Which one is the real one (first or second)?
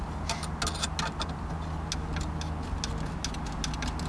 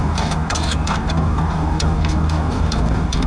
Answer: first